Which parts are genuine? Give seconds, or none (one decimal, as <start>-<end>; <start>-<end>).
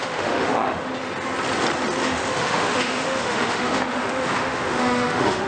0.9-2.0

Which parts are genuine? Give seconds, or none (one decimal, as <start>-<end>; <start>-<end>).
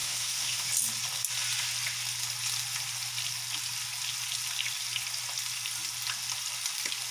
0.7-7.1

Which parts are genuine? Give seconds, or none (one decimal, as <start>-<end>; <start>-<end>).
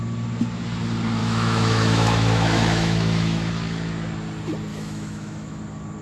0.0-1.2; 3.5-4.7; 5.6-6.0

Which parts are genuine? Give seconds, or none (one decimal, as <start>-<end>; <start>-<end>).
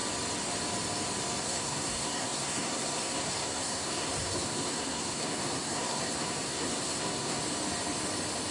0.0-1.4; 7.4-8.5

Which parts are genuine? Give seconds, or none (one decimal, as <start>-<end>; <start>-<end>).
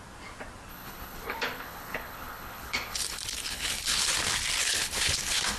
0.0-0.7; 4.1-4.6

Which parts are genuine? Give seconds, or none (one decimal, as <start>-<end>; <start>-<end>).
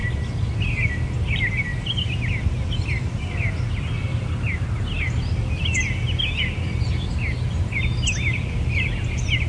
0.0-9.5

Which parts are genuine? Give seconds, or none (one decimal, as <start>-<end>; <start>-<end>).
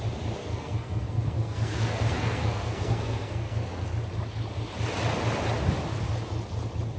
0.0-0.4; 3.9-7.0